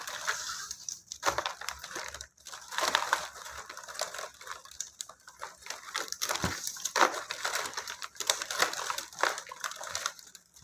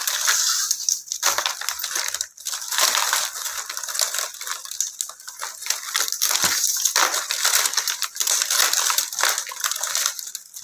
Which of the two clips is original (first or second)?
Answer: second